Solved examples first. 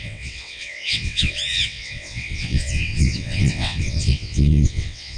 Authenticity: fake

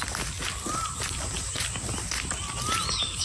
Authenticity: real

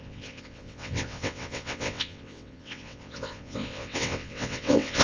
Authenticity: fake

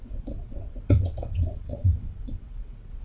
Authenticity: fake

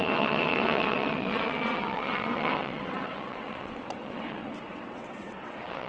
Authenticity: fake